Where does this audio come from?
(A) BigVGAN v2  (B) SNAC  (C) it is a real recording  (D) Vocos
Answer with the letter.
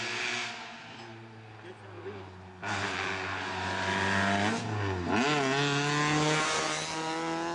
C